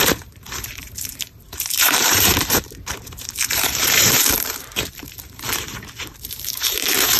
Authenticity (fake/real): fake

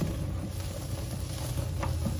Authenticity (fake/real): real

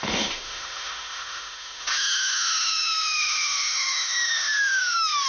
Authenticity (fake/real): fake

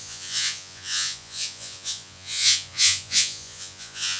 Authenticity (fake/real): fake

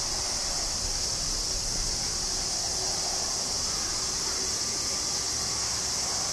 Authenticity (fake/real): real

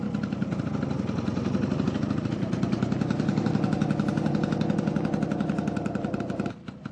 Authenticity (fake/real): real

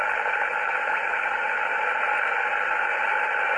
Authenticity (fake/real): real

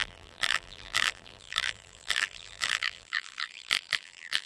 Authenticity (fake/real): fake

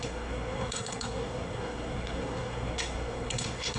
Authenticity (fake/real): fake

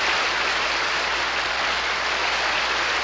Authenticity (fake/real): real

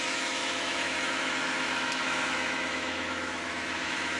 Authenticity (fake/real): fake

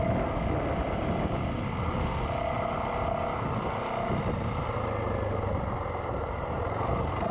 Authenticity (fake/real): real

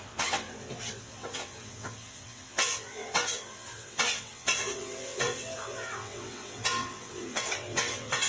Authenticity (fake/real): fake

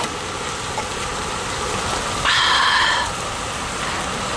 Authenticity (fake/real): fake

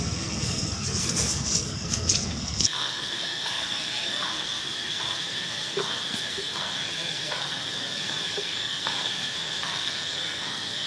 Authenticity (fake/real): fake